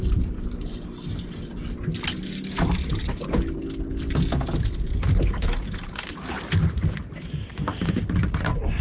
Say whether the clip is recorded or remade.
recorded